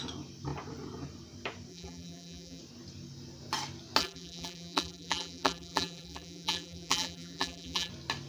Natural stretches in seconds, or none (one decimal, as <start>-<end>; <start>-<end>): 0.0-1.7; 2.6-4.0; 7.9-8.3